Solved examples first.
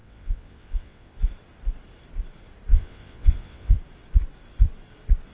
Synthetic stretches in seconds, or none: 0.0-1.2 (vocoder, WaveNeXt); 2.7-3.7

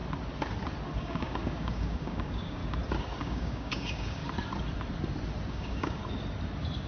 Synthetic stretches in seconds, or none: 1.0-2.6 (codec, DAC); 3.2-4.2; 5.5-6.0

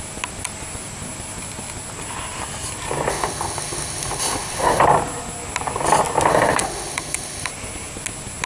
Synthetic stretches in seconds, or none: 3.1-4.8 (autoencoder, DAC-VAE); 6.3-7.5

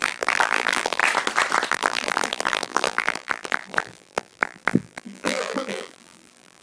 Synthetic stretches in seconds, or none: 0.0-1.0 (vocoder, BigVGAN v2); 1.7-6.6

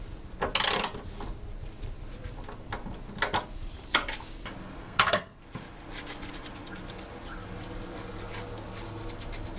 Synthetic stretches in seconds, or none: 4.8-5.4 (codec, SNAC)

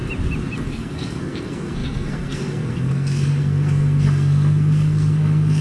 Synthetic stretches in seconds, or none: 0.7-5.6 (codec, SNAC)

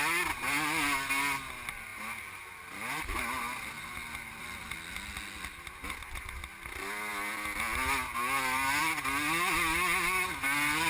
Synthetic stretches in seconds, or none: none

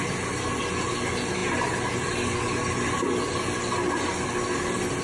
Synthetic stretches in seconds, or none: none